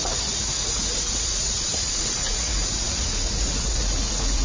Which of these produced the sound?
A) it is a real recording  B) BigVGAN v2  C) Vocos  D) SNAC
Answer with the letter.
C